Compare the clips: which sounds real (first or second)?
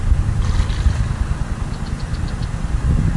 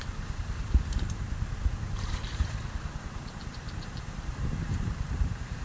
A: first